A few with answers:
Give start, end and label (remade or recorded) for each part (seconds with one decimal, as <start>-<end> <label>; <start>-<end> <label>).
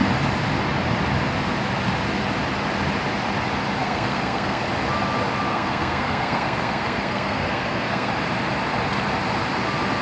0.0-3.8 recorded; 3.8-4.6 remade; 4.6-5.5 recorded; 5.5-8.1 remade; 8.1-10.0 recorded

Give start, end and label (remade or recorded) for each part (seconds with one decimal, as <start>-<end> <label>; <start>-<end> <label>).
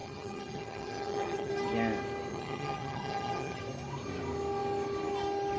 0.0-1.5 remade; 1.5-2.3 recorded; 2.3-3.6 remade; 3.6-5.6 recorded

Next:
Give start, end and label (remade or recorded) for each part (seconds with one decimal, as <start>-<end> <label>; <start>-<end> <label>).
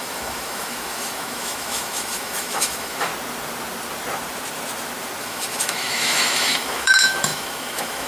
0.0-3.1 remade; 3.1-5.2 recorded; 5.2-8.1 remade